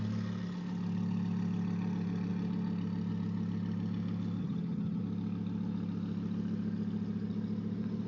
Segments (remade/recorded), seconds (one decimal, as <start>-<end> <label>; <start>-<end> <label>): 0.0-4.4 recorded; 4.4-5.0 remade; 5.0-8.1 recorded